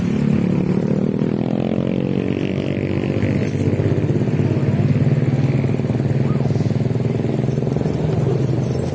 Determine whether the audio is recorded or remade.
recorded